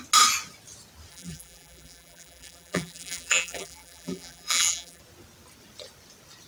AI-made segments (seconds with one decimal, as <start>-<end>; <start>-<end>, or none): 1.1-5.0